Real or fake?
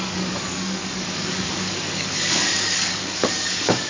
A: fake